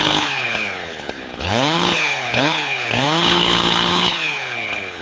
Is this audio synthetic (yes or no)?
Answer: yes